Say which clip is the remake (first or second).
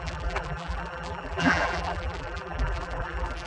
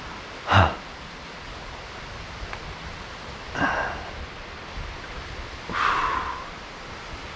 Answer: first